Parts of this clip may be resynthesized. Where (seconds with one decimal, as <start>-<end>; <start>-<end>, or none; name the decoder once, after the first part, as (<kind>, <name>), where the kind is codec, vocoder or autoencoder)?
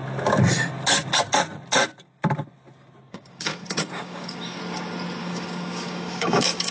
3.1-4.6 (codec, DAC); 5.2-6.7